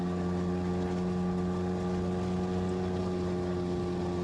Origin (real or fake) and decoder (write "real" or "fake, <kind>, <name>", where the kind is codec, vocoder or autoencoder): real